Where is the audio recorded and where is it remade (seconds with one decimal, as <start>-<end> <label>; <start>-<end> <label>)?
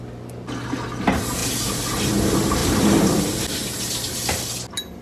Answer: 0.0-2.6 recorded; 2.6-3.4 remade; 3.4-5.0 recorded